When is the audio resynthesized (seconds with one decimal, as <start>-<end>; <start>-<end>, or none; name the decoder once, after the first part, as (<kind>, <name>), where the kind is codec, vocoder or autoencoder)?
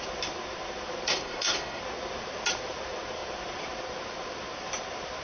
1.1-1.8 (codec, SNAC)